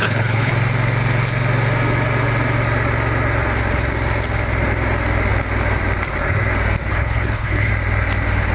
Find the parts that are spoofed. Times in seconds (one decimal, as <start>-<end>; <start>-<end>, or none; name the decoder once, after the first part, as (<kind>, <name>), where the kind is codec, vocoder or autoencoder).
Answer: 0.0-0.5 (codec, HILCodec); 6.9-7.7